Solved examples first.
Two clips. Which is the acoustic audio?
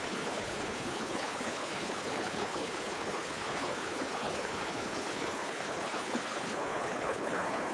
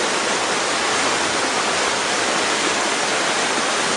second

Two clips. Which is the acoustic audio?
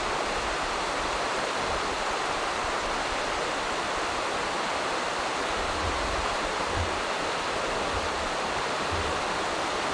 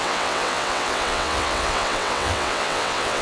first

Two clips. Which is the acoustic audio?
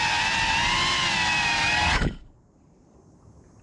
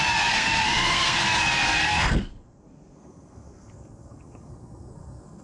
first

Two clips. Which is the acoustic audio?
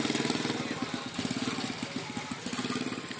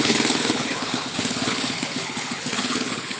first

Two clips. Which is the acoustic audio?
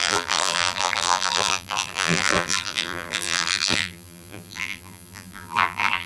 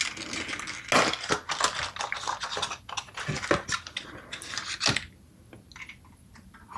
second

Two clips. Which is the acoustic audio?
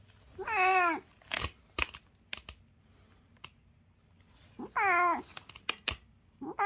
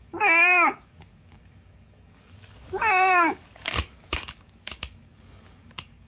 first